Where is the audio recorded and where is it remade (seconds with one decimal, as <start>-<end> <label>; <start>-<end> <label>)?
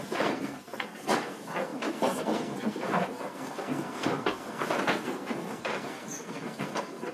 0.0-7.1 remade